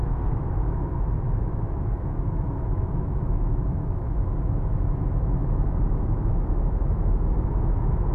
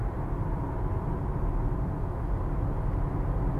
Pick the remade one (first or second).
first